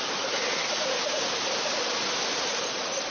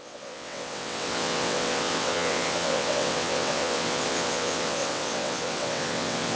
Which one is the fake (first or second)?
second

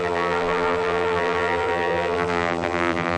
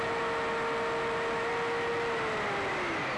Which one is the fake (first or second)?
first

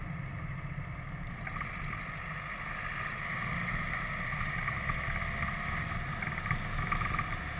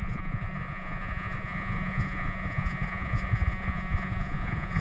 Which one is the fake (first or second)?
second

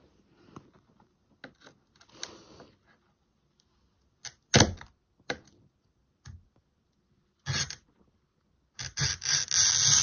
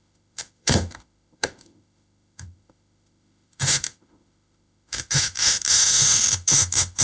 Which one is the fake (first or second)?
second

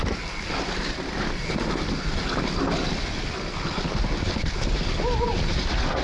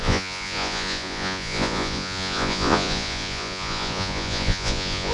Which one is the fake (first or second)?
second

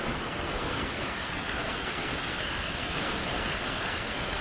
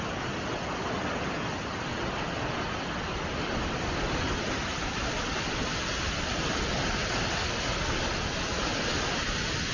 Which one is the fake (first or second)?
first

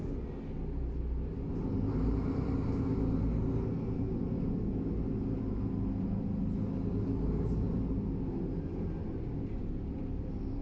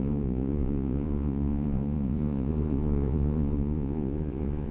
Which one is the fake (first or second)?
second